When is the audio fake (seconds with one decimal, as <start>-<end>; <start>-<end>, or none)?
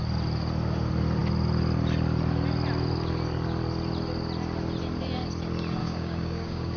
5.8-6.8